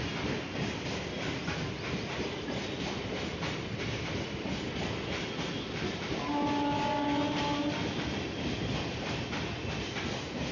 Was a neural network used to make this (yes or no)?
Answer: no